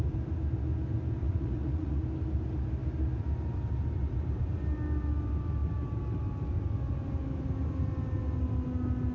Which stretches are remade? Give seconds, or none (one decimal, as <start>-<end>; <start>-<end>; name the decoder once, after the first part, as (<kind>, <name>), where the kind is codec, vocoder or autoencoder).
1.2-2.0 (vocoder, Vocos)